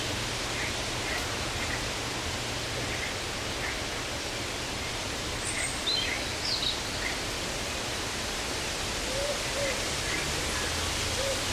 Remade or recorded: recorded